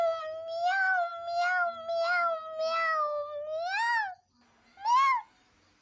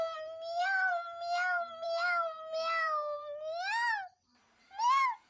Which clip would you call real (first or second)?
first